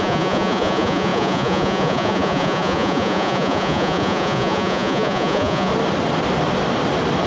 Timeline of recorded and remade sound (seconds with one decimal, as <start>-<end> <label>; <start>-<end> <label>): 0.0-5.7 remade; 5.7-7.3 recorded